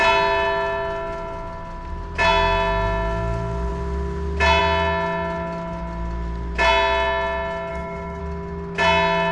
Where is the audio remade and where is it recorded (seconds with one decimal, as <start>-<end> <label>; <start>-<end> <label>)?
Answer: 0.0-7.7 recorded; 7.7-8.2 remade; 8.2-9.3 recorded